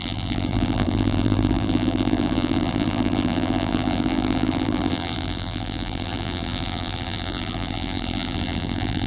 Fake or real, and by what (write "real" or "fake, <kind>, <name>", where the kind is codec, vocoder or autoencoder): fake, vocoder, BigVGAN v2